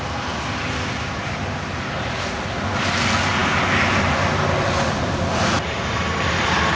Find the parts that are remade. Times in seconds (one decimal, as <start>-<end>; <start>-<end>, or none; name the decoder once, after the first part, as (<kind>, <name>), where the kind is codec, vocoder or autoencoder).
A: none